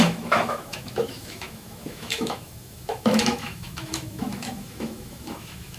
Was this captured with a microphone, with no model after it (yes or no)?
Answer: no